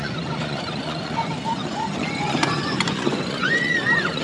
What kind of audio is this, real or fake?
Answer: fake